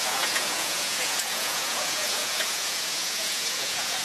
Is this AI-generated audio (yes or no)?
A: yes